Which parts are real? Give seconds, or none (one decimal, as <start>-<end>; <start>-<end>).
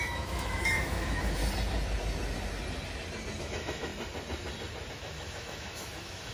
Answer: 1.4-3.4; 3.9-4.9